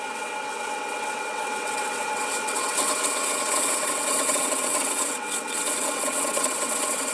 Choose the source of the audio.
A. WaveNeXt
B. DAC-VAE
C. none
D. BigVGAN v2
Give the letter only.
A